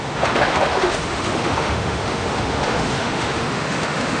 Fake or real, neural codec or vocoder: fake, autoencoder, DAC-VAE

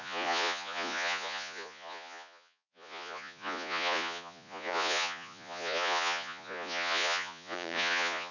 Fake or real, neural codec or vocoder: fake, vocoder, Vocos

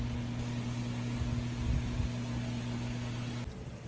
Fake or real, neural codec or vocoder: real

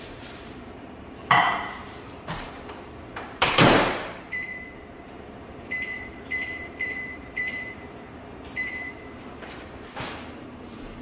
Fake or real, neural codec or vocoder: fake, vocoder, BigVGAN v2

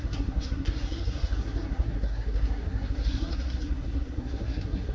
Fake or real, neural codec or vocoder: fake, codec, SNAC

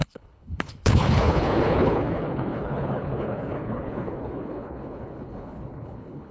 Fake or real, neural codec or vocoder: fake, codec, HILCodec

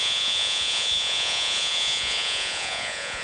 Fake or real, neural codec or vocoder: fake, vocoder, Vocos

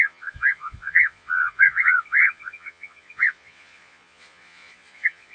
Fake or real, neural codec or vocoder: fake, vocoder, Vocos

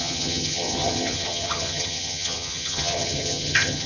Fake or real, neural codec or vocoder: fake, vocoder, HiFi-GAN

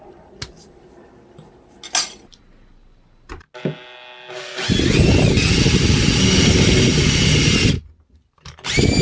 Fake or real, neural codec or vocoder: real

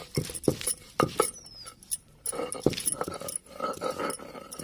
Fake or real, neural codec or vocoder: real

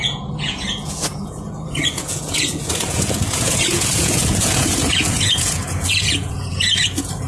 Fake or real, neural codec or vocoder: fake, vocoder, Vocos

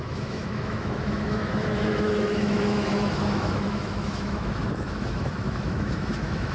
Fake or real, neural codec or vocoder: fake, autoencoder, DAC-VAE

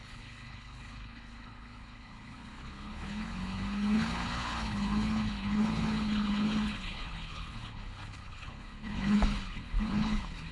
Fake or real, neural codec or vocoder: fake, codec, HILCodec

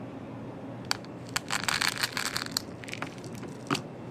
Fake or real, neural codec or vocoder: real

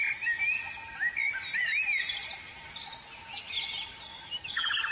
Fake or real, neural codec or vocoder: real